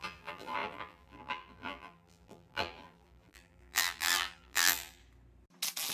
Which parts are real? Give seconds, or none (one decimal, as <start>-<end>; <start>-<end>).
5.0-5.9